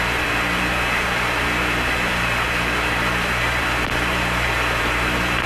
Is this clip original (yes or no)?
no